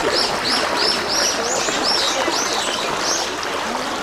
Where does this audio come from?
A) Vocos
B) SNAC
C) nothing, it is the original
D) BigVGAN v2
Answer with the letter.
C